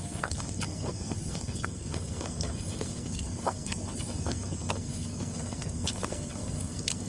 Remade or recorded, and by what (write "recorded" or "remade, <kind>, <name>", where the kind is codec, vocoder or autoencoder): remade, codec, SNAC